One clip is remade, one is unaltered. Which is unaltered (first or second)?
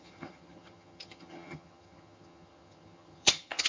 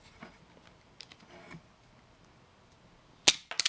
second